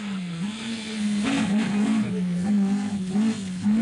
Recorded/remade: remade